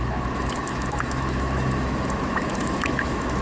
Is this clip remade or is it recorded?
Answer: remade